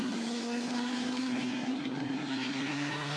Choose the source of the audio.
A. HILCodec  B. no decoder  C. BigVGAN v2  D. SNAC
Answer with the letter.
D